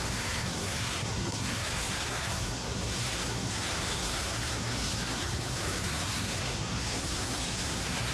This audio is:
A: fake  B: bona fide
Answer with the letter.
A